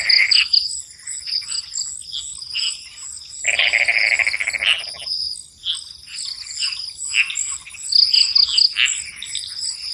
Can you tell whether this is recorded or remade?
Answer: recorded